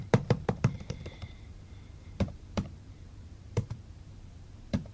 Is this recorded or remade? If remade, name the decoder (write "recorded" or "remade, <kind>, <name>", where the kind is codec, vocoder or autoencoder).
remade, vocoder, BigVGAN v2